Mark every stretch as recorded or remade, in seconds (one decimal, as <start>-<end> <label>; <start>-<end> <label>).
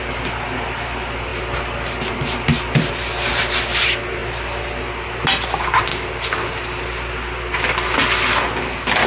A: 0.0-9.1 recorded